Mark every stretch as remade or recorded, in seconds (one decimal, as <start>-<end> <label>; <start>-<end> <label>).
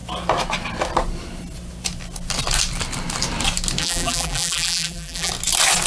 0.0-3.8 recorded; 3.8-5.3 remade; 5.3-5.9 recorded